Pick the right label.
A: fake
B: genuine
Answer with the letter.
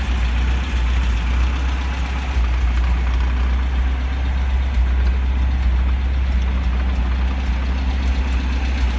B